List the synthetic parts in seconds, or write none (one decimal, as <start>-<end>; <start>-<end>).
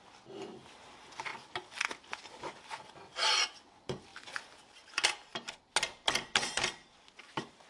none